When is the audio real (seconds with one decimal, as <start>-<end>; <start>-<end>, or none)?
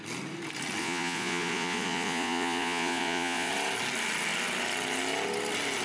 0.0-0.8; 3.5-5.8